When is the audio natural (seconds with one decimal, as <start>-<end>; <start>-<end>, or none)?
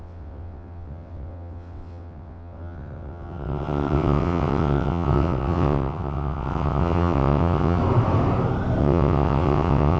7.8-8.8